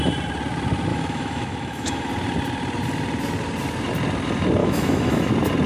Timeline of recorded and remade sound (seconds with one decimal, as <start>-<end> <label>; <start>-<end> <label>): 0.0-0.9 recorded; 0.9-2.1 remade; 2.1-4.6 recorded; 4.6-5.3 remade; 5.3-5.7 recorded